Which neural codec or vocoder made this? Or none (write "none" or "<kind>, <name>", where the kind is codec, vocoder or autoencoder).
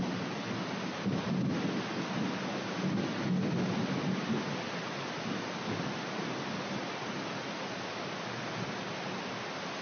none